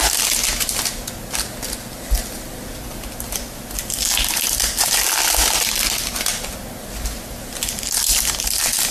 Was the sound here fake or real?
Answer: real